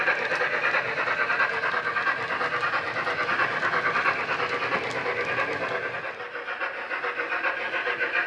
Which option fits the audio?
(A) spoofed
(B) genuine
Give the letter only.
B